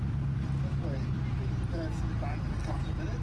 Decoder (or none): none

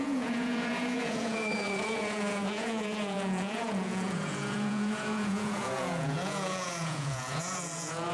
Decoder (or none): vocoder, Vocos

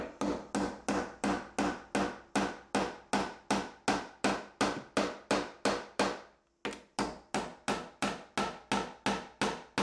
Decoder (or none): none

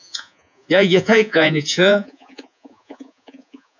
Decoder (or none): vocoder, Vocos